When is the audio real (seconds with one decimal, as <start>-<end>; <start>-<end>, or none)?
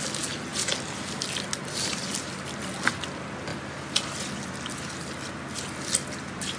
0.0-6.6